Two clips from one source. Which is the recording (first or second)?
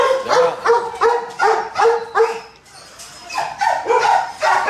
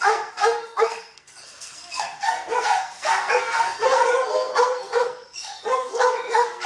first